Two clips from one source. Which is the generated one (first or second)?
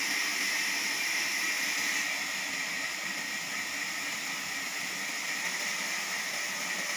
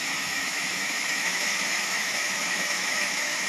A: second